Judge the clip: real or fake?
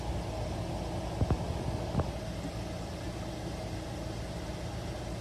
real